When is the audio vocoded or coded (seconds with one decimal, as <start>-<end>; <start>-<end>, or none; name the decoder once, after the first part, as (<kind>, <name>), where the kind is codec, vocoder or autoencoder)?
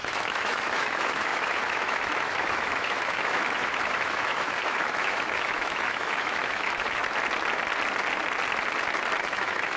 0.0-7.0 (autoencoder, DAC-VAE); 9.2-9.8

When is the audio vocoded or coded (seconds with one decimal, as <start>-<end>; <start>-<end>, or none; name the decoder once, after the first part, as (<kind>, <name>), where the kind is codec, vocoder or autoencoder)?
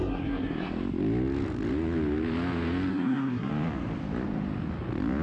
0.0-0.7 (codec, SNAC); 2.9-3.5